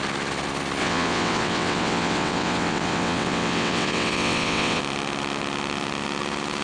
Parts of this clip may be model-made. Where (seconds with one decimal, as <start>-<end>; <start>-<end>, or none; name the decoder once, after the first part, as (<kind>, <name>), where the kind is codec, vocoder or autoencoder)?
0.8-4.8 (vocoder, WaveNeXt)